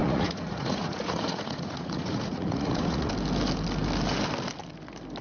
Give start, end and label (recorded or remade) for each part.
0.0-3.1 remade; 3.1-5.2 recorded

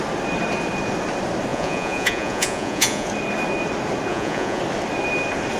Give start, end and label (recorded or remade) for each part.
0.0-1.5 recorded; 1.5-3.1 remade; 3.1-4.1 recorded; 4.1-4.6 remade; 4.6-5.6 recorded

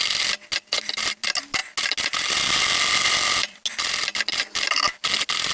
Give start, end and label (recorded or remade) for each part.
0.0-5.5 recorded

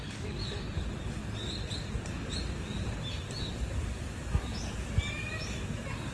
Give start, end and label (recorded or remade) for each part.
0.0-6.1 recorded

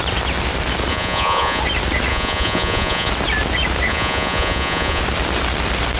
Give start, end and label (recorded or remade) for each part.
0.0-0.9 recorded; 0.9-1.6 remade; 1.6-2.1 recorded; 2.1-3.1 remade; 3.1-3.9 recorded; 3.9-5.0 remade; 5.0-6.0 recorded

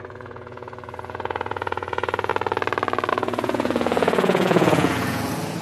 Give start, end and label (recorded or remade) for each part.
0.0-2.3 remade; 2.3-3.1 recorded; 3.1-5.6 remade

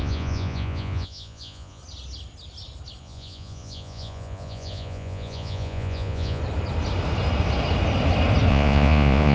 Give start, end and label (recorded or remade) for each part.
0.0-1.8 remade; 1.8-3.0 recorded; 3.0-6.4 remade; 6.4-8.5 recorded; 8.5-9.3 remade

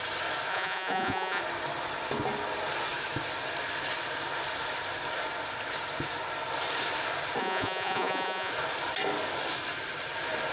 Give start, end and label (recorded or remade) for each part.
0.0-0.5 recorded; 0.5-1.4 remade; 1.4-7.4 recorded; 7.4-8.5 remade; 8.5-10.5 recorded